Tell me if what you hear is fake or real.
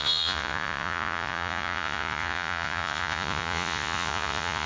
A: fake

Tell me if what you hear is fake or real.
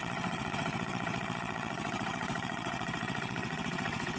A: fake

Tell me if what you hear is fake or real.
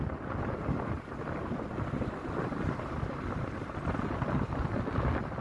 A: real